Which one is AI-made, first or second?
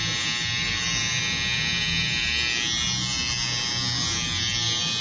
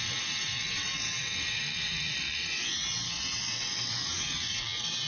second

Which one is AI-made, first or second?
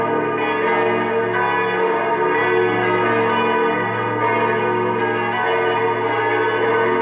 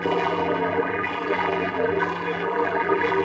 second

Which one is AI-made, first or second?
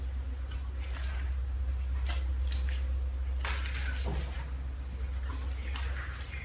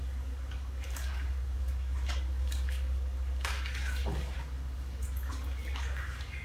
second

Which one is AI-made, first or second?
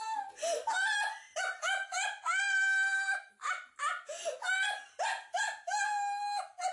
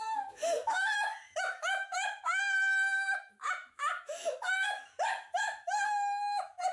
second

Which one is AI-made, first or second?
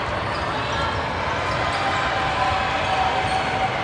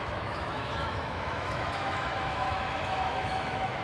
second